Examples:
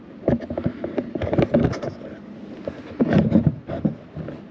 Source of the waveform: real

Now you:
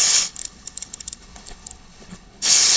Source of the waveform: fake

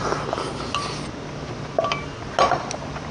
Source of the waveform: real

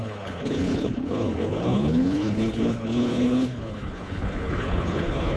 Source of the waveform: fake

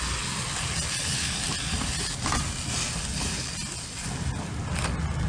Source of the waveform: real